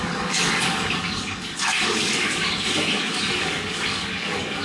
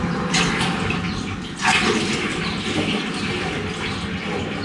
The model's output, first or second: first